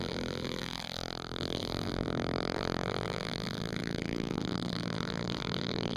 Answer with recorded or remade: remade